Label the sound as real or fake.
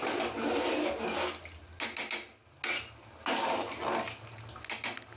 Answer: real